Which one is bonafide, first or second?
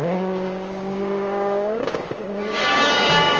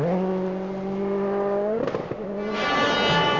second